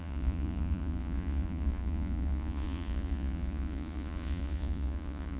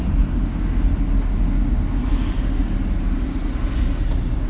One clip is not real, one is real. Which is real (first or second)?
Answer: second